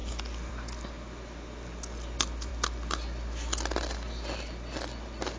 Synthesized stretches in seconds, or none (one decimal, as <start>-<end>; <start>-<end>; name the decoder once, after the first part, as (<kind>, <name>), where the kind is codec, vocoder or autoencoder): none